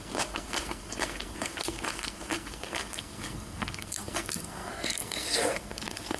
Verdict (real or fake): fake